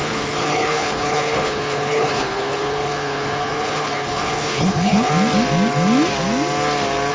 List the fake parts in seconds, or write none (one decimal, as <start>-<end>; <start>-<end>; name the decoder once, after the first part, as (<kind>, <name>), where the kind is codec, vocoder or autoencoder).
0.0-5.1 (codec, HILCodec)